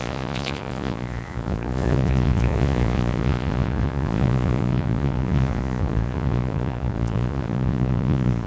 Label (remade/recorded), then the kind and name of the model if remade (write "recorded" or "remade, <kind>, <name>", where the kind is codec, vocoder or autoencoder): remade, vocoder, Vocos